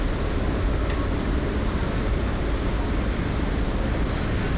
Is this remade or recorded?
recorded